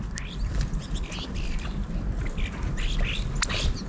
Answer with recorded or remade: recorded